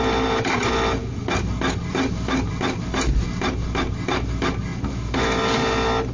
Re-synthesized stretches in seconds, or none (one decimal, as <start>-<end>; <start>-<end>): none

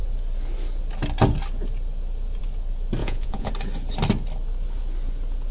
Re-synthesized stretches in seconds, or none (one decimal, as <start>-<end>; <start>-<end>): 3.0-3.5

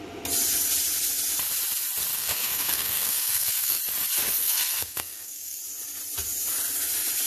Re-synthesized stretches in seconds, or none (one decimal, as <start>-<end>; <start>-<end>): 2.1-3.8; 4.4-5.6

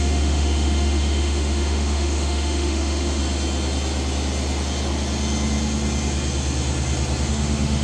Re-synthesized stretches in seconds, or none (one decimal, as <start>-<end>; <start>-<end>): 0.0-3.2; 7.3-7.8

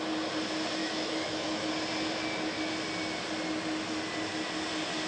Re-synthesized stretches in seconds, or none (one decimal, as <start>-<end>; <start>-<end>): 0.8-1.7

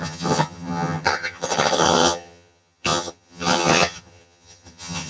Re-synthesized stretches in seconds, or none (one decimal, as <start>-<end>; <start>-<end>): 0.0-5.1